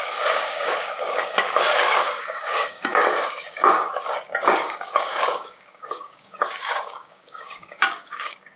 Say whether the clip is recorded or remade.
remade